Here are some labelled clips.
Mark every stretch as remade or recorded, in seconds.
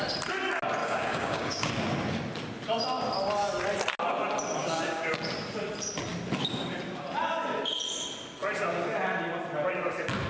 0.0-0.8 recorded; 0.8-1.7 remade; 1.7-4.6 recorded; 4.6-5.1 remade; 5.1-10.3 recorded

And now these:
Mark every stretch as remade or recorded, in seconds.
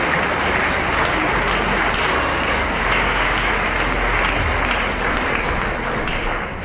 0.0-2.3 recorded; 2.3-3.5 remade; 3.5-6.6 recorded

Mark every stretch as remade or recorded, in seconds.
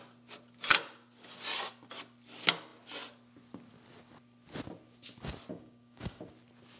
0.0-5.5 recorded; 5.5-6.3 remade; 6.3-6.8 recorded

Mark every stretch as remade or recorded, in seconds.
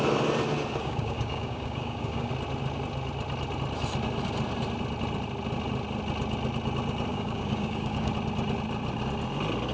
0.0-0.8 recorded; 0.8-2.3 remade; 2.3-7.1 recorded; 7.1-8.1 remade; 8.1-9.7 recorded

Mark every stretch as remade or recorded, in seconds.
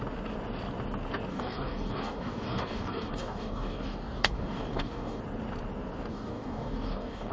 0.0-1.3 recorded; 1.3-5.2 remade; 5.2-6.1 recorded; 6.1-7.3 remade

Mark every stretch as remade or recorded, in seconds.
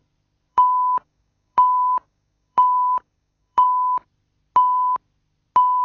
0.0-0.5 recorded; 0.5-4.0 remade; 4.0-5.8 recorded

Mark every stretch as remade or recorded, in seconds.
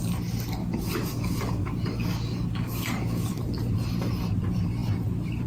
0.0-0.6 recorded; 0.6-3.4 remade; 3.4-5.5 recorded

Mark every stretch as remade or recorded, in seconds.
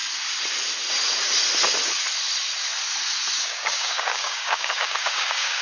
0.0-3.4 recorded; 3.4-5.6 remade